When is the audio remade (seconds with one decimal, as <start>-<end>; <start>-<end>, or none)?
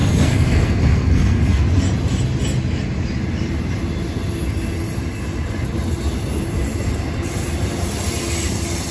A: 0.0-1.6